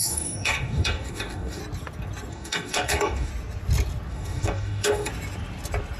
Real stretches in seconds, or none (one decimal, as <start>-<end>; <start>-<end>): 1.6-2.3; 3.3-4.1; 5.1-6.0